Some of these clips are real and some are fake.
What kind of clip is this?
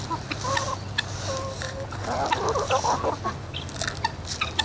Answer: real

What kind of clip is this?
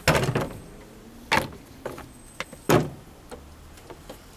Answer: real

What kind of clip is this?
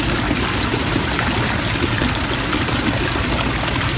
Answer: real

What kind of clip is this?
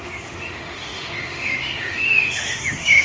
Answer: fake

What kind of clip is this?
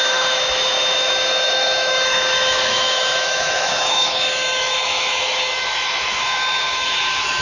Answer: fake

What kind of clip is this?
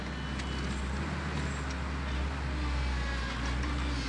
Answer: real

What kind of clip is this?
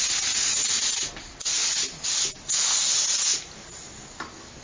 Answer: real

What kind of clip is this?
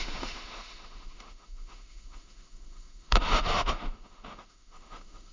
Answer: fake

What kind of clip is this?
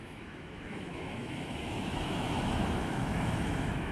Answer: fake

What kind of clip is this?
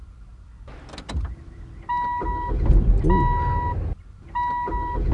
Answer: real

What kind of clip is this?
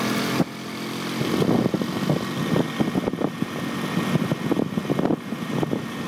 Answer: real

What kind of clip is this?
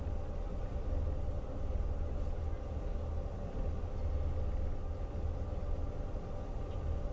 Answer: real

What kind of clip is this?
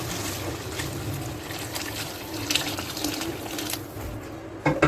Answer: real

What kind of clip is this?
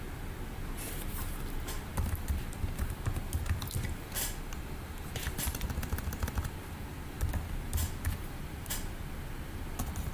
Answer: real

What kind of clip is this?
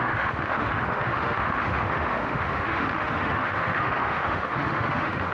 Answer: fake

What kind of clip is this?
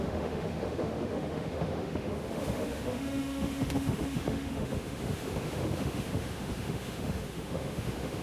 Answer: fake